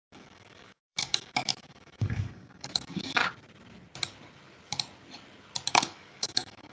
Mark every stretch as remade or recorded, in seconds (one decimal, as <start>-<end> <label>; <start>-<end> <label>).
0.0-3.2 remade; 3.2-5.7 recorded; 5.7-6.7 remade